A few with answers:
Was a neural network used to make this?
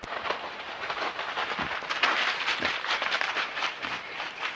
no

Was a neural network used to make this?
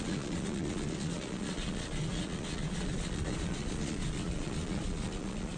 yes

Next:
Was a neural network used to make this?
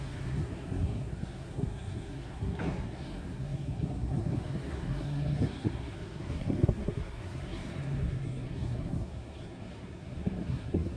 yes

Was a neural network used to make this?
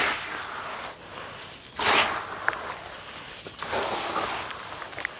no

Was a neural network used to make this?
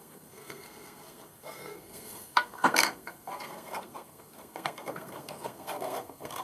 yes